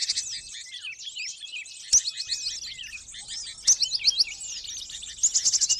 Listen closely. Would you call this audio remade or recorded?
recorded